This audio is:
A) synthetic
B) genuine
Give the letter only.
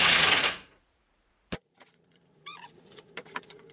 A